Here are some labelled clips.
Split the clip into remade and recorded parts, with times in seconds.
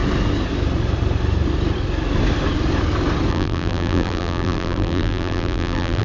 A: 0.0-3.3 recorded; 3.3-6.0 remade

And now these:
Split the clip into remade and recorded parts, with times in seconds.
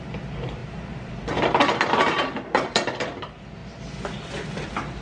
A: 0.0-0.6 recorded; 0.6-1.1 remade; 1.1-5.0 recorded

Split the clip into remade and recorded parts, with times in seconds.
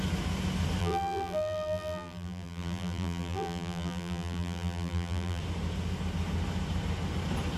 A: 0.0-0.8 recorded; 0.8-5.4 remade; 5.4-7.6 recorded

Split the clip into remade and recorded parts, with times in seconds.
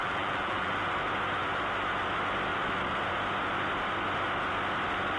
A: 0.0-0.7 remade; 0.7-5.2 recorded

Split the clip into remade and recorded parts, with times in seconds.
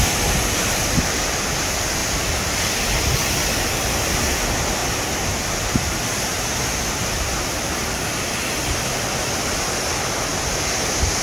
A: 0.0-4.8 recorded; 4.8-6.5 remade; 6.5-7.8 recorded; 7.8-8.3 remade; 8.3-11.2 recorded